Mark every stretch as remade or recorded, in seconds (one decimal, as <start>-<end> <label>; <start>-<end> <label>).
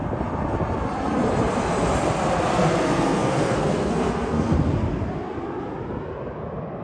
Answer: 0.0-2.5 recorded; 2.5-4.7 remade; 4.7-6.8 recorded